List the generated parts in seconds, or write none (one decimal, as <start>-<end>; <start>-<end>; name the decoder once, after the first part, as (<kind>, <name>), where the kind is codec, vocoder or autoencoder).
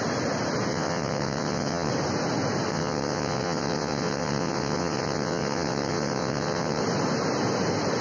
0.7-1.9 (vocoder, WaveNeXt); 2.7-6.8